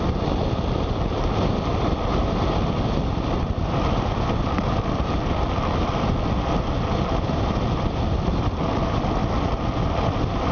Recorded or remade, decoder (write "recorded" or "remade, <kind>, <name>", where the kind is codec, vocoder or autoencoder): recorded